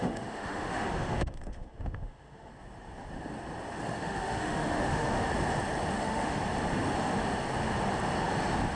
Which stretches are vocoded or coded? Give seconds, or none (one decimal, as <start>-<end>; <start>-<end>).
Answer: 0.0-2.5; 3.8-5.3; 5.9-6.4